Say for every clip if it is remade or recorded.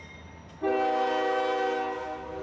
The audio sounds recorded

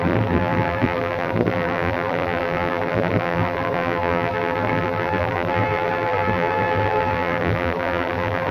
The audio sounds remade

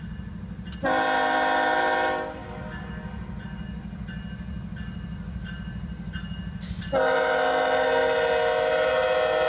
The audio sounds recorded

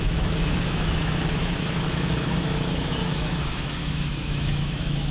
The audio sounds remade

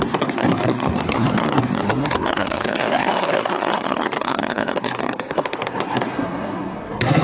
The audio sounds remade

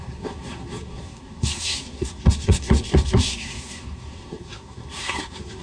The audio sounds remade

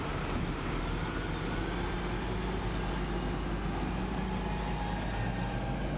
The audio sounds recorded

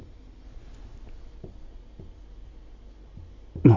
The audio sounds recorded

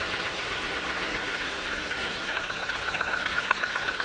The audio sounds remade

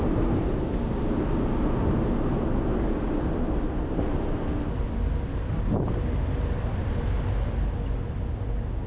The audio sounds recorded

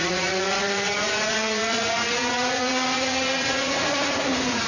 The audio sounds remade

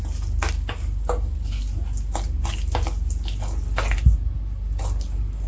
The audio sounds recorded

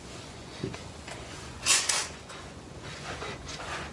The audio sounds remade